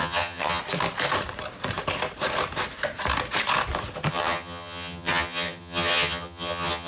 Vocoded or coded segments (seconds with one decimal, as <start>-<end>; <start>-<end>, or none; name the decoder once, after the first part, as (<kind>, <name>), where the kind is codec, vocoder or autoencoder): 0.0-0.6 (vocoder, HiFi-GAN); 4.1-6.9